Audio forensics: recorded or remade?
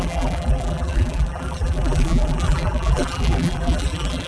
remade